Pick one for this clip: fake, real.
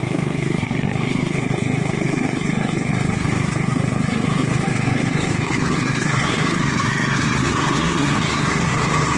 fake